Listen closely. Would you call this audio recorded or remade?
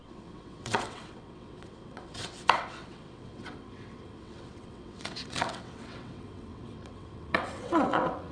remade